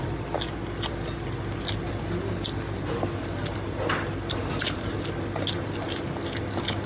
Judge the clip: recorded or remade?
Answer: recorded